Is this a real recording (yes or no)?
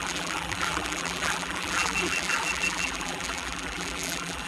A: no